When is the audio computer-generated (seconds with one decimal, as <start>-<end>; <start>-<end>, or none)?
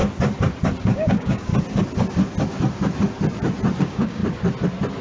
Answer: 0.8-1.5; 3.8-4.2